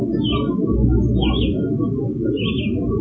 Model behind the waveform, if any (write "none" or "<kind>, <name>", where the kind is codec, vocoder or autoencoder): none